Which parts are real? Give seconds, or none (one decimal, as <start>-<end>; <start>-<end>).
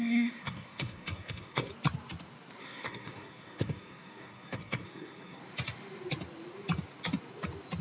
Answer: 1.7-2.6; 5.4-7.8